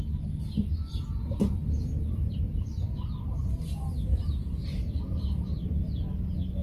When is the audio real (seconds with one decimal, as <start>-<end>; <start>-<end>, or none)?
0.0-3.4; 5.2-6.6